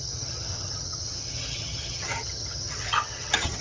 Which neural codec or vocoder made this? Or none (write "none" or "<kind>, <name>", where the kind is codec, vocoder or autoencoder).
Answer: vocoder, HiFi-GAN